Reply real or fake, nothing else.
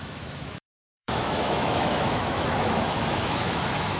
fake